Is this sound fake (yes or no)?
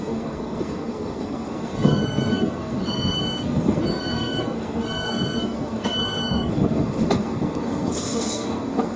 yes